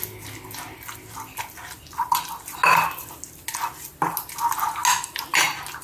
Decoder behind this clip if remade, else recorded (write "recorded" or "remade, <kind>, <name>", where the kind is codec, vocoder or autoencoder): recorded